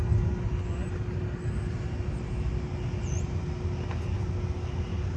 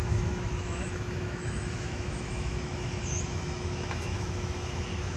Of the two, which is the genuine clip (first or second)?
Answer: first